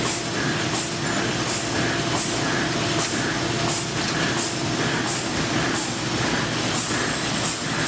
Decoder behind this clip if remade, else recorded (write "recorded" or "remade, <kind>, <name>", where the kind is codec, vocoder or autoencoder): recorded